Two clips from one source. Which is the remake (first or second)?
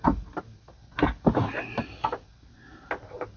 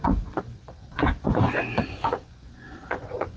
second